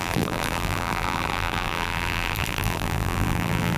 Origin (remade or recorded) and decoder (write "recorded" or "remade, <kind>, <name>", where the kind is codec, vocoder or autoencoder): remade, vocoder, BigVGAN v2